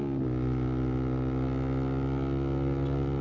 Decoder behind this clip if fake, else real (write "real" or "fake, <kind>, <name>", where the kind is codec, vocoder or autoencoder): real